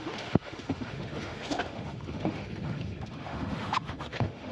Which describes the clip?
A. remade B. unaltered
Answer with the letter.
A